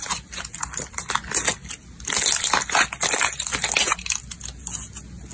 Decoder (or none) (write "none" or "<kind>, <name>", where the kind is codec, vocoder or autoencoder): none